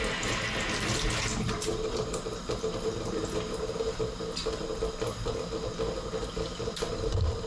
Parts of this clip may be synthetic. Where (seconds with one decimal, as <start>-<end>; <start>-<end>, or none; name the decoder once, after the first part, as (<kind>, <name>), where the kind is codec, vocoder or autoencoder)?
1.3-4.6 (vocoder, BigVGAN v2)